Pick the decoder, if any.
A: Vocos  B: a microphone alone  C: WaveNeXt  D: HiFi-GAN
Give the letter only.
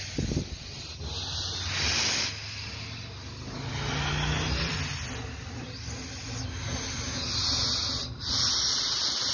B